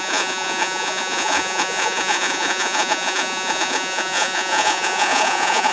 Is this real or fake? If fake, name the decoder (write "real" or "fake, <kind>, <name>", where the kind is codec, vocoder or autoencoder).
fake, vocoder, Vocos